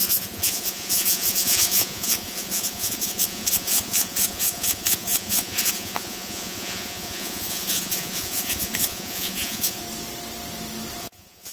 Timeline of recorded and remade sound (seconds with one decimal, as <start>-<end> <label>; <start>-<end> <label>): 0.0-9.8 remade; 9.8-11.0 recorded; 11.0-11.5 remade

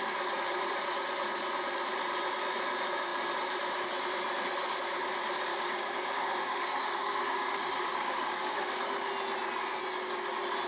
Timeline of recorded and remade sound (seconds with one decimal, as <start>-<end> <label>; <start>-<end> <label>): 0.0-5.5 recorded; 5.5-8.8 remade; 8.8-10.7 recorded

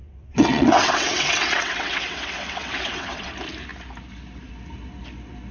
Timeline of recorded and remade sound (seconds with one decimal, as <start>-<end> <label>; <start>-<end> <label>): 0.0-3.3 remade; 3.3-5.5 recorded

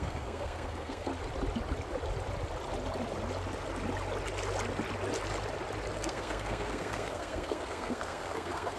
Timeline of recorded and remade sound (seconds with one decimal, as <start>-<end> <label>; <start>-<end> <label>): 0.0-1.1 remade; 1.1-5.9 recorded; 5.9-8.8 remade